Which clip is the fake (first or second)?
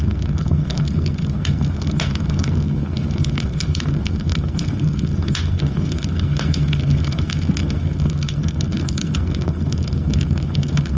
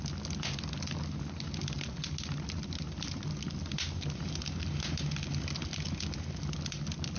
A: first